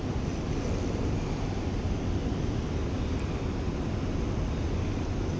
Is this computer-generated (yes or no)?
no